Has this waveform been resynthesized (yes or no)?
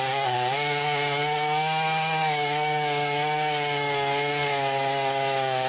yes